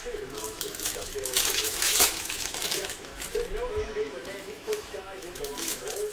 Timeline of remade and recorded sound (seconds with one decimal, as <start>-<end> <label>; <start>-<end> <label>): 0.0-3.1 remade; 3.1-3.7 recorded; 3.7-6.1 remade